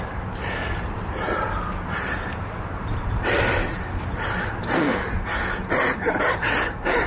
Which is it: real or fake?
fake